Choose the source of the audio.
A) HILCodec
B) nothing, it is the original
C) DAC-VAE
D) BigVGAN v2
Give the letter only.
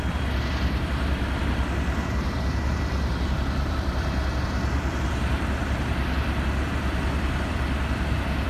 D